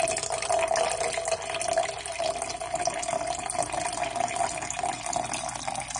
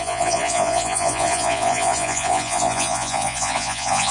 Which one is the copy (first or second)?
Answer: second